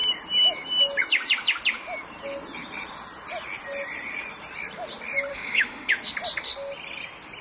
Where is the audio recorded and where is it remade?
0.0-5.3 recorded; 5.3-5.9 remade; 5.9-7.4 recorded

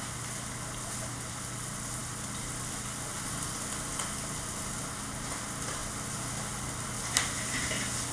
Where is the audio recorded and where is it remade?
0.0-2.0 recorded; 2.0-4.0 remade; 4.0-5.8 recorded; 5.8-7.4 remade; 7.4-8.1 recorded

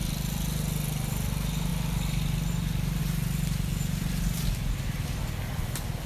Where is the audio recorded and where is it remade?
0.0-6.1 recorded

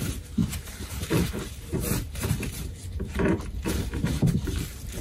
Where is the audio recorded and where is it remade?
0.0-5.0 remade

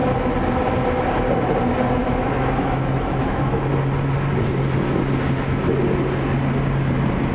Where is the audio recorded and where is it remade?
0.0-2.0 recorded; 2.0-3.5 remade; 3.5-7.3 recorded